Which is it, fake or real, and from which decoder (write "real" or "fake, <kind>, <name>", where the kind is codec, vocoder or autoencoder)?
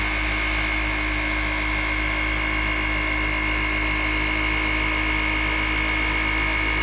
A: fake, vocoder, BigVGAN v2